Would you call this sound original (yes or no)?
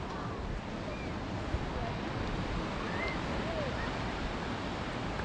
yes